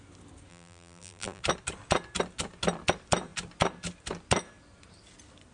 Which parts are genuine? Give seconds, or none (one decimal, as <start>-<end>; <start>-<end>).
0.0-0.5; 1.4-5.5